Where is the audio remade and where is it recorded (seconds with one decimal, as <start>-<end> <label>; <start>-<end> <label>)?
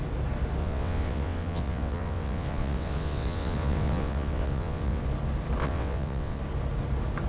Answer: 0.0-0.6 recorded; 0.6-5.0 remade; 5.0-5.6 recorded; 5.6-6.4 remade; 6.4-7.3 recorded